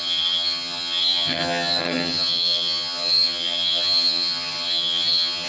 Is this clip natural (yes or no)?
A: no